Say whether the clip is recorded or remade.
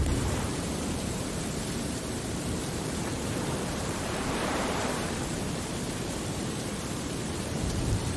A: remade